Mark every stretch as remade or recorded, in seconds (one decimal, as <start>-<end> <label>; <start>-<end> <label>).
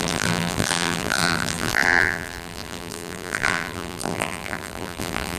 0.0-5.4 remade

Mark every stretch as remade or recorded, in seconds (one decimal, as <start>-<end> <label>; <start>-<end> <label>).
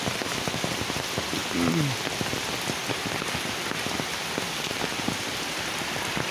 0.0-6.3 recorded